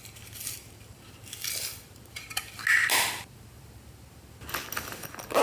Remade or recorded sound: recorded